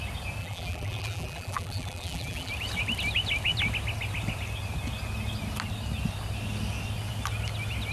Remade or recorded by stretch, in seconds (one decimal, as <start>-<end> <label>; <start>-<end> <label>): 0.0-0.4 recorded; 0.4-2.5 remade; 2.5-7.9 recorded

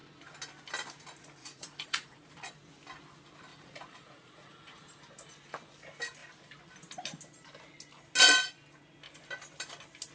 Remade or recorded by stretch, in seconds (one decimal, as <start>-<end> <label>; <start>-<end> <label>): 0.0-1.4 recorded; 1.4-2.3 remade; 2.3-3.5 recorded; 3.5-4.8 remade; 4.8-10.1 recorded

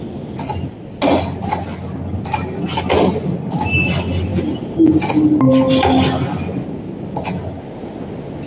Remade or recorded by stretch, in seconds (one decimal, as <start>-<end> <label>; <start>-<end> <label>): 0.0-8.5 recorded

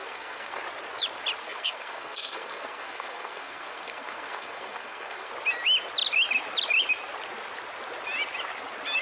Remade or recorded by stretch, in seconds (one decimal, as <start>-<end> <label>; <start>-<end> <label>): 0.0-0.6 remade; 0.6-1.4 recorded; 1.4-5.3 remade; 5.3-9.0 recorded

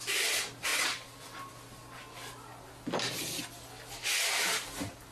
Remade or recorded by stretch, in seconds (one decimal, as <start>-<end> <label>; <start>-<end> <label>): 0.0-5.1 recorded

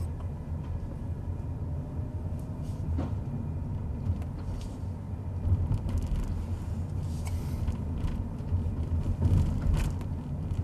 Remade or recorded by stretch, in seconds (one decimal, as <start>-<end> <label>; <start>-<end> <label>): 0.0-10.6 recorded

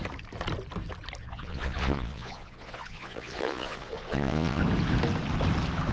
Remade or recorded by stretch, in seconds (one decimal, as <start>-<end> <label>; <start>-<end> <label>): 0.0-1.2 recorded; 1.2-4.6 remade; 4.6-5.9 recorded

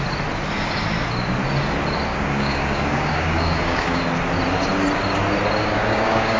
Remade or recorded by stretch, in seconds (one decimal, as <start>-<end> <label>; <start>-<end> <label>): 0.0-2.1 recorded; 2.1-4.0 remade; 4.0-5.6 recorded; 5.6-6.4 remade